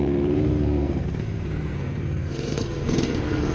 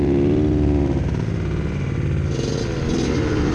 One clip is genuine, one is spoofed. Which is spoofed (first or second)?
first